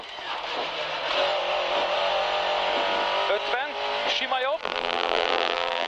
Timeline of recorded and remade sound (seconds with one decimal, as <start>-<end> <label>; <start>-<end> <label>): 0.0-4.6 recorded; 4.6-5.9 remade